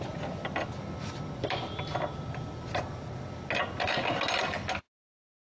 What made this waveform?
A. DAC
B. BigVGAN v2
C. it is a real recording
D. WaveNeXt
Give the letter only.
C